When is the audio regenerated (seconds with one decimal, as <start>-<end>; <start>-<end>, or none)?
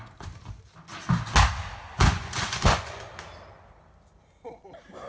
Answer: 1.9-3.0